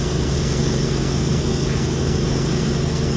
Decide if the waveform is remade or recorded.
remade